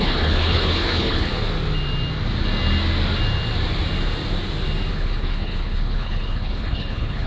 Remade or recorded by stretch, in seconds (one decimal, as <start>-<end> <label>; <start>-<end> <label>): 0.0-1.3 remade; 1.3-4.9 recorded; 4.9-7.3 remade